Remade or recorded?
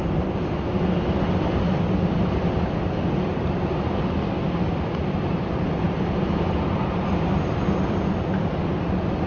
recorded